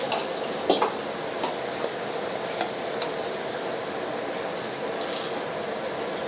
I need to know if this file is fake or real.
real